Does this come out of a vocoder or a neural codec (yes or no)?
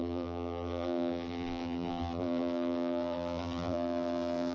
yes